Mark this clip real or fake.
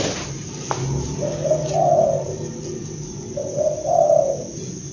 real